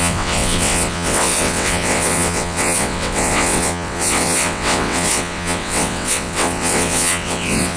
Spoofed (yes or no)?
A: yes